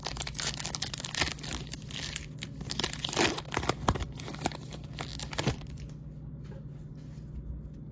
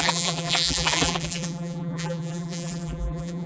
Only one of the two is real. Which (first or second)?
first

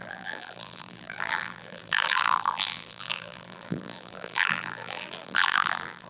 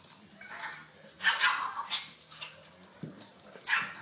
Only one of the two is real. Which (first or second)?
second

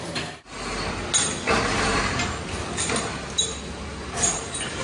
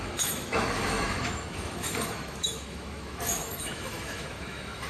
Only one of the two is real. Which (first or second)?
first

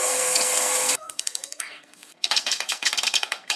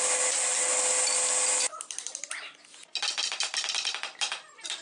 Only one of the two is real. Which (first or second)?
second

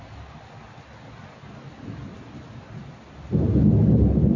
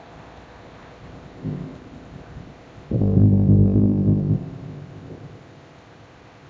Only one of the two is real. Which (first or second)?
first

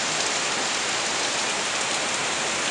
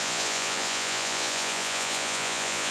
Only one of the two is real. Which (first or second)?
first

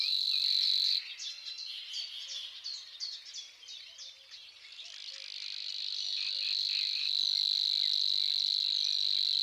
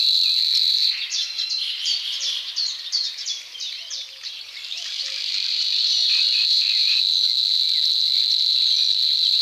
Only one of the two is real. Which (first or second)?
first